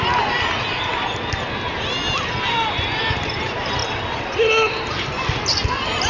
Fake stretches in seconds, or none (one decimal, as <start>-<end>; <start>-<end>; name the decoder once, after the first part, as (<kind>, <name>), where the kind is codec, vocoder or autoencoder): 0.0-0.9 (vocoder, BigVGAN v2); 3.0-3.8; 4.7-6.1